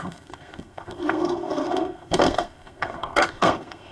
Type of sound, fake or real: fake